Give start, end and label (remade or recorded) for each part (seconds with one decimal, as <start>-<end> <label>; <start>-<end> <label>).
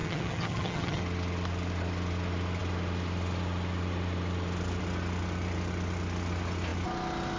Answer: 0.0-1.0 remade; 1.0-7.4 recorded